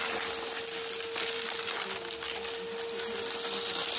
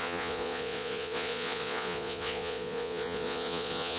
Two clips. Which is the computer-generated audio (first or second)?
second